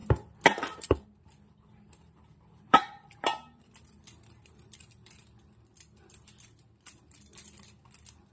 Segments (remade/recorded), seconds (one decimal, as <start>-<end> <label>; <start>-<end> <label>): 0.0-8.3 remade